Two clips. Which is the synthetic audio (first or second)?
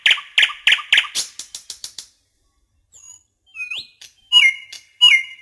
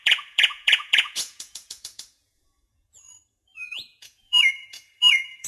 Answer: second